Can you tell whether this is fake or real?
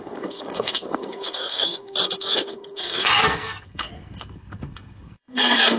fake